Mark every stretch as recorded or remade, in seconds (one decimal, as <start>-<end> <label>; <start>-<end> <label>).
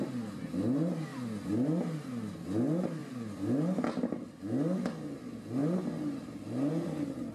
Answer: 0.0-3.0 recorded; 3.0-3.8 remade; 3.8-7.3 recorded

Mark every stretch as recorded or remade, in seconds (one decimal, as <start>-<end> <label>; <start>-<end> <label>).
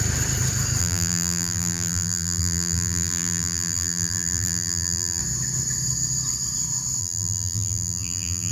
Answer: 0.0-0.8 recorded; 0.8-5.2 remade; 5.2-7.0 recorded; 7.0-8.5 remade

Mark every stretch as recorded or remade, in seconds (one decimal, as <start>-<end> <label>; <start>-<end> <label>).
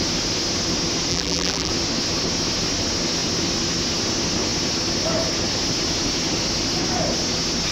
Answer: 0.0-1.1 recorded; 1.1-1.7 remade; 1.7-7.7 recorded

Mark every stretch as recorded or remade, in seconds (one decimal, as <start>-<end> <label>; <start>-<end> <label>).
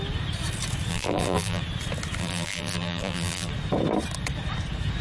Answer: 0.0-0.9 recorded; 0.9-1.6 remade; 1.6-2.2 recorded; 2.2-3.5 remade; 3.5-5.0 recorded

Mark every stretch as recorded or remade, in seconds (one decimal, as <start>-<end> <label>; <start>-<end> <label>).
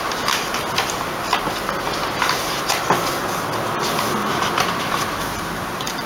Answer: 0.0-2.0 recorded; 2.0-2.7 remade; 2.7-4.2 recorded; 4.2-6.1 remade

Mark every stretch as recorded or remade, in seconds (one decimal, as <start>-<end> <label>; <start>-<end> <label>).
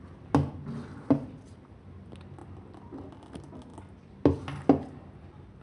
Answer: 0.0-5.6 recorded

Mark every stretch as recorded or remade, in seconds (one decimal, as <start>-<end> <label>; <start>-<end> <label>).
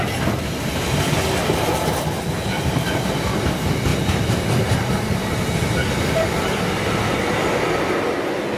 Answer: 0.0-8.6 recorded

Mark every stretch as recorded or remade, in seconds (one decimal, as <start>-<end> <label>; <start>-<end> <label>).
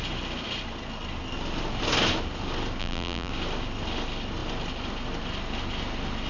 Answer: 0.0-2.8 recorded; 2.8-3.3 remade; 3.3-6.3 recorded